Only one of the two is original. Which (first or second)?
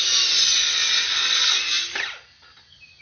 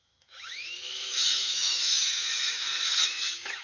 first